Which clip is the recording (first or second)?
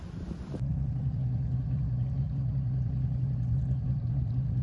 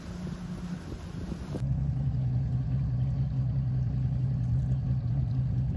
second